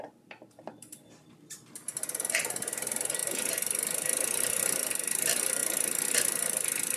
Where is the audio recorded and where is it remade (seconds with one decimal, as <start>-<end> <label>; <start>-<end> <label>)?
0.0-1.9 remade; 1.9-2.4 recorded; 2.4-5.6 remade; 5.6-6.3 recorded; 6.3-7.0 remade